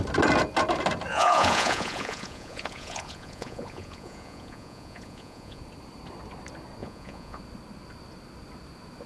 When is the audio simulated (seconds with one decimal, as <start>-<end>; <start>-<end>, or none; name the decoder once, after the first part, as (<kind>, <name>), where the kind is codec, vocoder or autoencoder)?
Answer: 1.1-5.6 (vocoder, Vocos); 6.8-7.4